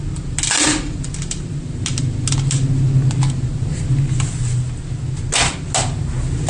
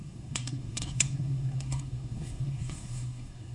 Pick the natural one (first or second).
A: first